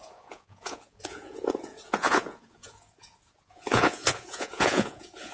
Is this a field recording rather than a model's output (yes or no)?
no